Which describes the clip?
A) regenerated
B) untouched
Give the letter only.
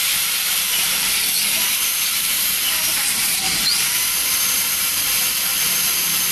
A